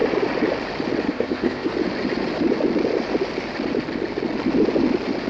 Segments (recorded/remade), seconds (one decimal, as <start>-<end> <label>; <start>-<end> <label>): 0.0-1.1 recorded; 1.1-1.7 remade; 1.7-5.3 recorded